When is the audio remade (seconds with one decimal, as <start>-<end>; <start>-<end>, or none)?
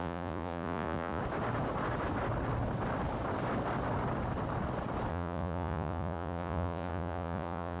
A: 0.0-1.2; 5.1-7.8